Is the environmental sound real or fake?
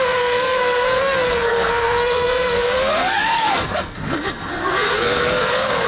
fake